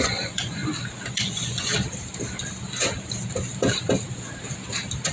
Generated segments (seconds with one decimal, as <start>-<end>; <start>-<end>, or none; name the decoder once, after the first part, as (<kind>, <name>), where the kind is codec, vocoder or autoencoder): 0.0-0.6 (vocoder, Vocos); 1.1-1.7